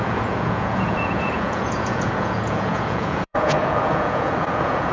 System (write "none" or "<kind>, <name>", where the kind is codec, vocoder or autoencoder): vocoder, Vocos